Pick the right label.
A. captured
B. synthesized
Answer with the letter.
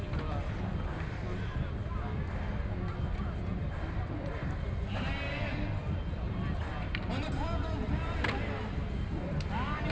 A